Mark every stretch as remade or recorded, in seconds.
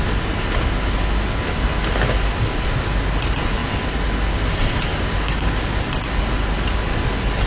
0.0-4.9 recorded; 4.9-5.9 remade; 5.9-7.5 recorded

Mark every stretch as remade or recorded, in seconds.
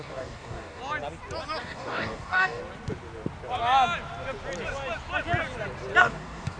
0.0-0.8 remade; 0.8-1.6 recorded; 1.6-2.6 remade; 2.6-6.0 recorded; 6.0-6.6 remade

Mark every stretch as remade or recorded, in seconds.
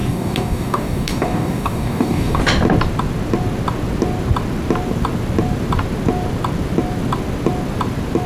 0.0-2.4 remade; 2.4-8.3 recorded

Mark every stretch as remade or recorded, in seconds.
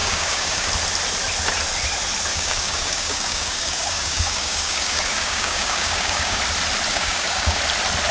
0.0-0.7 remade; 0.7-2.3 recorded; 2.3-6.4 remade; 6.4-6.9 recorded; 6.9-7.6 remade; 7.6-8.1 recorded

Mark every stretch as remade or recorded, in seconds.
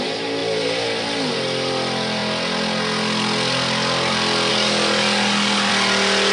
0.0-4.5 recorded; 4.5-5.7 remade; 5.7-6.3 recorded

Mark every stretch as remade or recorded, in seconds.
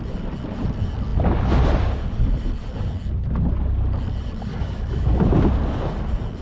0.0-4.5 recorded; 4.5-5.2 remade; 5.2-6.4 recorded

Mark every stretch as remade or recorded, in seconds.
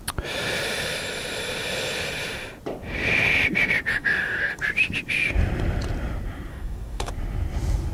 0.0-3.9 recorded; 3.9-4.6 remade; 4.6-6.5 recorded; 6.5-7.1 remade; 7.1-7.9 recorded